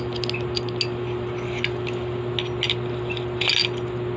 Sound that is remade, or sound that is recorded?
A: recorded